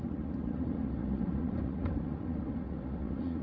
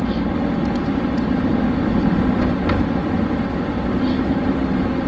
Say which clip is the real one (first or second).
second